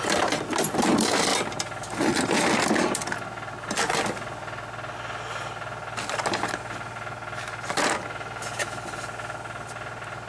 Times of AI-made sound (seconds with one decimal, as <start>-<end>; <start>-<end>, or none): none